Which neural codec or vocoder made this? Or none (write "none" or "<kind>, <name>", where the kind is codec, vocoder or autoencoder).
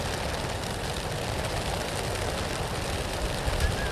none